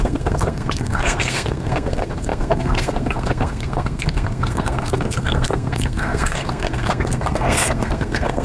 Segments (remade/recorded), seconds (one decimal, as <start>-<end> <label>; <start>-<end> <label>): 0.0-8.4 remade